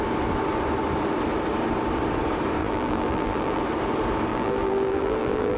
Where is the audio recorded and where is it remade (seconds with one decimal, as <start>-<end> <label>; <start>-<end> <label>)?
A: 0.0-2.6 recorded; 2.6-3.6 remade; 3.6-4.3 recorded; 4.3-5.6 remade